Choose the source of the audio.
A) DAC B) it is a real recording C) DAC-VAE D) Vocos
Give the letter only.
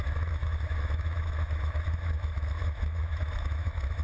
C